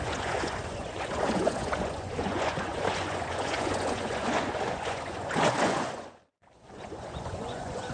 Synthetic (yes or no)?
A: yes